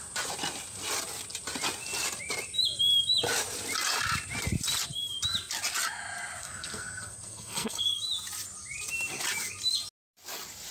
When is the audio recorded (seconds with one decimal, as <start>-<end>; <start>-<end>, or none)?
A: 0.0-6.4; 8.0-10.7

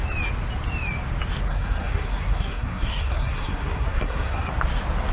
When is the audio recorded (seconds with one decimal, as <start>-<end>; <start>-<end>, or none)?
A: 0.0-1.5; 4.5-5.1

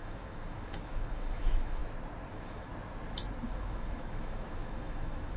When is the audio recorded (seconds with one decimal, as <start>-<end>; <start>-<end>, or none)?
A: 1.8-2.3; 2.7-3.4

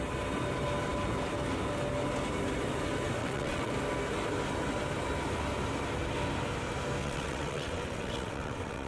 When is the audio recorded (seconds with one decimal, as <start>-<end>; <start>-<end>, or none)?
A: 0.0-3.2; 3.7-7.0

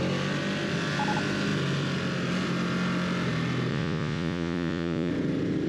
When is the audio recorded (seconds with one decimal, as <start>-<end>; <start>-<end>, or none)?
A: 0.0-3.7; 5.1-5.7

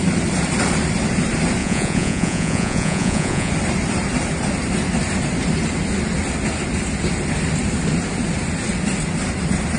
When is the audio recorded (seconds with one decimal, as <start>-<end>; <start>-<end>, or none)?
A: 0.0-1.6; 3.5-9.8

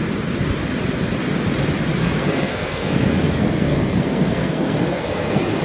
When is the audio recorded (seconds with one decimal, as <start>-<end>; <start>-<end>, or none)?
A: 0.0-2.0

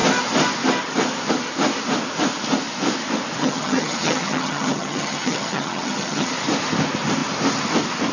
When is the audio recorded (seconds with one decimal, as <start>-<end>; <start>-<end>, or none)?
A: 0.0-3.4; 6.3-8.1